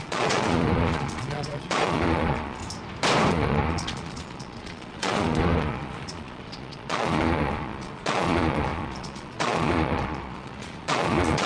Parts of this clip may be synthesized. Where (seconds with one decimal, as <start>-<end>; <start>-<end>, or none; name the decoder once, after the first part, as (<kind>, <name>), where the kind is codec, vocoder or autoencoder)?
0.0-2.6 (vocoder, Vocos); 3.3-11.5